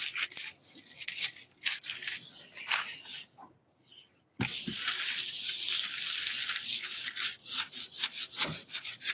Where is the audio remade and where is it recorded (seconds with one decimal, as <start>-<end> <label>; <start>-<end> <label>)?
0.0-7.4 recorded; 7.4-9.1 remade